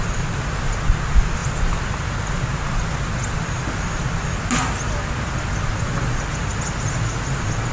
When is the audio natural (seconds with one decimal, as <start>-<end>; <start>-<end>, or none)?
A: 0.0-7.7